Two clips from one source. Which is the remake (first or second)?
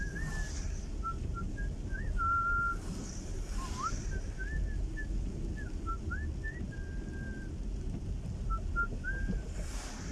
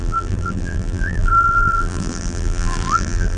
second